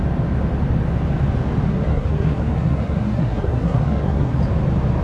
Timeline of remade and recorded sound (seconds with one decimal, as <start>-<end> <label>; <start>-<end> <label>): 0.0-1.7 recorded; 1.7-4.4 remade; 4.4-5.0 recorded